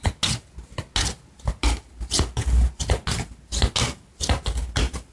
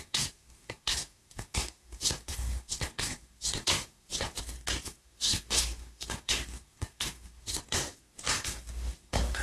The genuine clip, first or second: first